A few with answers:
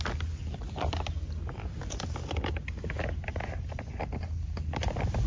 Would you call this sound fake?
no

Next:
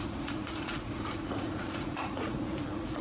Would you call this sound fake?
yes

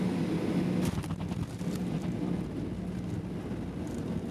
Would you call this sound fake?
no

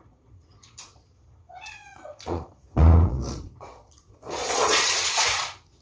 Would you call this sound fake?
yes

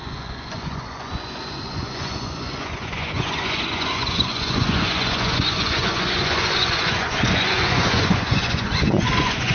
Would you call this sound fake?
yes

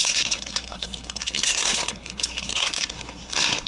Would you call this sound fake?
yes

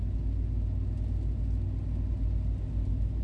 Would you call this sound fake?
no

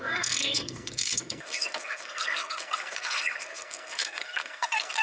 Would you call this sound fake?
yes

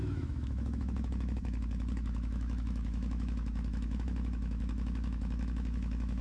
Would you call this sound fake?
yes